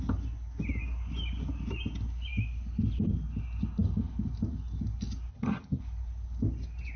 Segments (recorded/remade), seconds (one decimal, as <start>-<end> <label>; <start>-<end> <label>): 0.0-5.3 recorded; 5.3-5.8 remade; 5.8-7.0 recorded